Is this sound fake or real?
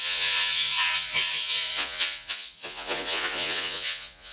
fake